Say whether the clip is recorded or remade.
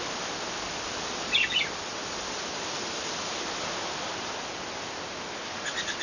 recorded